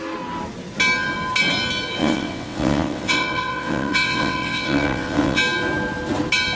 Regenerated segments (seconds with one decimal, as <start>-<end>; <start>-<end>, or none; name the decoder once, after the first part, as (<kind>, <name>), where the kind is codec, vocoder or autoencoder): 2.0-5.4 (vocoder, WaveNeXt)